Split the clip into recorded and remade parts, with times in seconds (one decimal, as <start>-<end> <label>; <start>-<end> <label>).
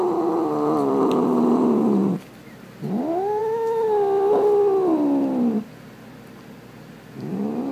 0.0-7.7 recorded